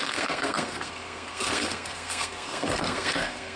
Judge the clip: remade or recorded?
remade